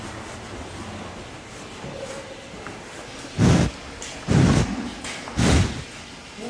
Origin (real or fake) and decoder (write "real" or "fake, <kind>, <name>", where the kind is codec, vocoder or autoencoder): real